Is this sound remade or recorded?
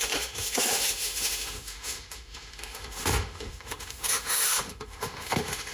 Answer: remade